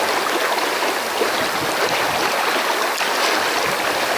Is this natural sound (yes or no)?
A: yes